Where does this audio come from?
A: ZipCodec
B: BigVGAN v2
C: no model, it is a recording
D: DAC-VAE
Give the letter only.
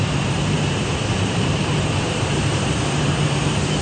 B